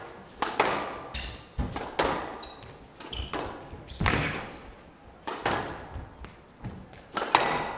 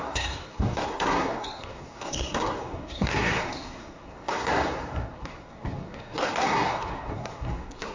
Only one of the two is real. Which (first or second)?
first